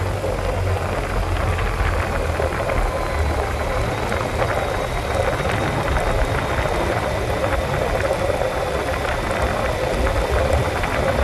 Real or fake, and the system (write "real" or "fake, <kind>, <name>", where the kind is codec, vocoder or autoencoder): real